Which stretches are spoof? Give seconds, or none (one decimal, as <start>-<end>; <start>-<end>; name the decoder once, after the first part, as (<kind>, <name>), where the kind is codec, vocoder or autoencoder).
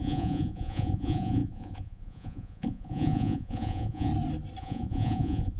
0.0-4.1 (vocoder, Vocos); 4.6-5.6